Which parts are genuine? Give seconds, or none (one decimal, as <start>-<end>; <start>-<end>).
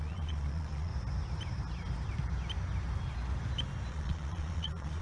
0.9-3.9